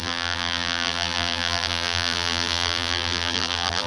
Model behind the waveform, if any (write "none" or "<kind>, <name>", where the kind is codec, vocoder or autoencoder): vocoder, BigVGAN v2